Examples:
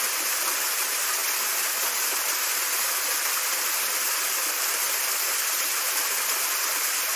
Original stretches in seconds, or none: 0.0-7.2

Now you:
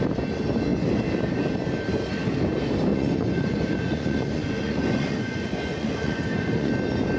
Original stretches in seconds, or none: 0.0-2.9; 6.7-7.2

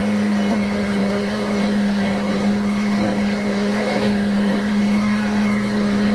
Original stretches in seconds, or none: 0.0-0.5

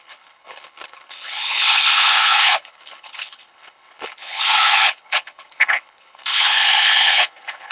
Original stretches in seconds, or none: none

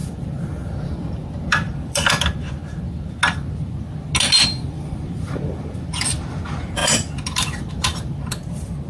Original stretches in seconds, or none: 0.0-1.5; 2.6-4.6

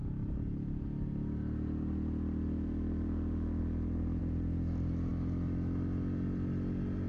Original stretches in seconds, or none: 0.0-7.1

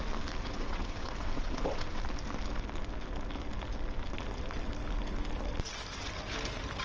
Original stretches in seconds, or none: 0.0-0.4; 2.0-6.8